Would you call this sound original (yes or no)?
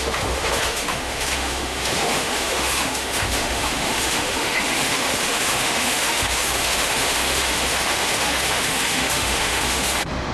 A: no